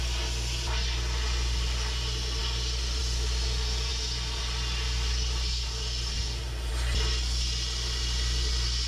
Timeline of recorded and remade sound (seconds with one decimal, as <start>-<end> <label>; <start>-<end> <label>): 0.0-8.9 recorded